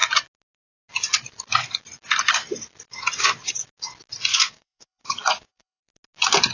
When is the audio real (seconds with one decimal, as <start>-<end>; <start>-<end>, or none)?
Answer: 0.0-4.3; 5.8-6.5